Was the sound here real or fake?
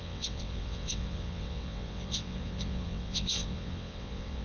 fake